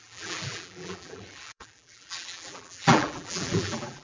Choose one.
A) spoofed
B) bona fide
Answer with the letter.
A